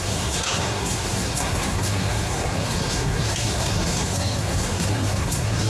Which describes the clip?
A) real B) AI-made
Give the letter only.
B